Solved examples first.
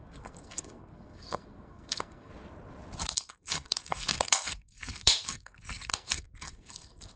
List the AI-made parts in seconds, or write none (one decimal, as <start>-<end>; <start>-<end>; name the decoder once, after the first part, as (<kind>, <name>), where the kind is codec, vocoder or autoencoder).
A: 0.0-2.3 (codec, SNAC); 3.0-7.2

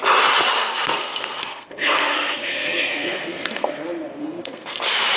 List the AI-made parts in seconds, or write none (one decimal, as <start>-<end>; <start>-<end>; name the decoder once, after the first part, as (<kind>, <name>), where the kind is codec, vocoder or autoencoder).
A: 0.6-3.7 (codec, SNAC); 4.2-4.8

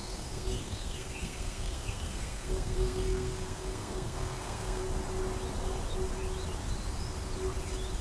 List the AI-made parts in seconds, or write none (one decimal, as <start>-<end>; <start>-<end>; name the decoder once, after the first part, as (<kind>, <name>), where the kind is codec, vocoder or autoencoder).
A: 0.0-4.8 (codec, SNAC)

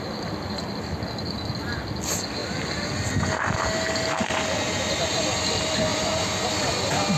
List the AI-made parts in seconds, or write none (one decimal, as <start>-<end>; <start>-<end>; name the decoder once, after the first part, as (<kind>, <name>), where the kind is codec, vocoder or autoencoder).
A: none

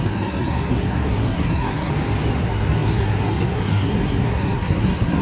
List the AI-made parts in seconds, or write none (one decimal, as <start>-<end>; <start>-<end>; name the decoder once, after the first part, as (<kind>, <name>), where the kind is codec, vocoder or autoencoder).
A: 0.0-1.9 (codec, SNAC); 2.4-5.2